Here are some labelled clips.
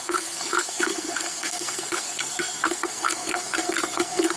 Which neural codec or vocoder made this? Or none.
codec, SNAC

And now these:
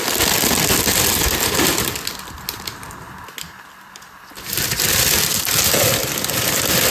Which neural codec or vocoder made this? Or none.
none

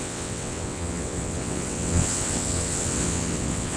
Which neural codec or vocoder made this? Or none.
vocoder, WaveNeXt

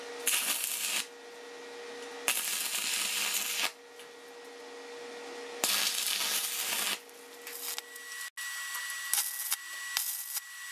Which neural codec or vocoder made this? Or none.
none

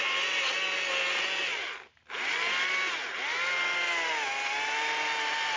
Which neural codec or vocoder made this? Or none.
none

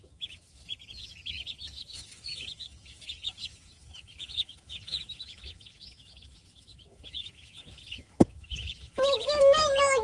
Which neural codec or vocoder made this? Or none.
autoencoder, DAC-VAE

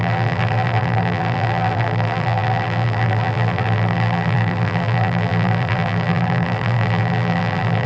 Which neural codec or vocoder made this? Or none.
vocoder, BigVGAN v2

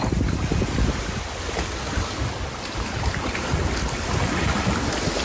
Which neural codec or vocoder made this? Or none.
none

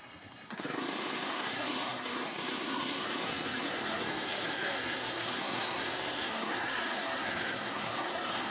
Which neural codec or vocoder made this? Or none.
codec, SNAC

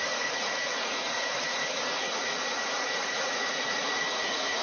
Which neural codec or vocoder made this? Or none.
vocoder, Vocos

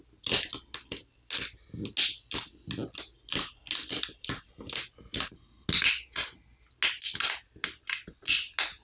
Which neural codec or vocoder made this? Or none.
none